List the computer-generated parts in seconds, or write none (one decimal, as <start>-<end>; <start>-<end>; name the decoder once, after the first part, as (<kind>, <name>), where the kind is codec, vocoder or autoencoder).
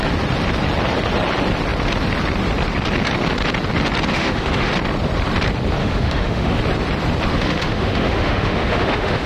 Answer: 4.1-4.7 (autoencoder, DAC-VAE); 5.8-6.6; 7.3-9.3